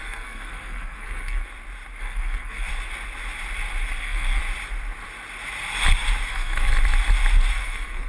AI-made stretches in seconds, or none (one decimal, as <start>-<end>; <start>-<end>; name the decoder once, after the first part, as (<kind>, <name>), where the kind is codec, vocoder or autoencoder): 0.0-1.4 (codec, SNAC); 2.0-2.7; 4.0-4.4; 6.3-6.7; 7.5-8.1